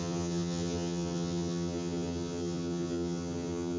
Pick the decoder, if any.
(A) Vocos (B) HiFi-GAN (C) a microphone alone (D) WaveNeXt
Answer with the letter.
B